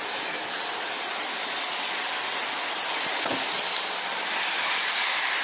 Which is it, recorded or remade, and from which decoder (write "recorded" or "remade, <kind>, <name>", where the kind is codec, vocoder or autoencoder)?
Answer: recorded